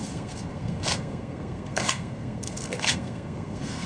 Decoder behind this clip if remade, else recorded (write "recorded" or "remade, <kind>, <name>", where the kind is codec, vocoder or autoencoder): remade, codec, SNAC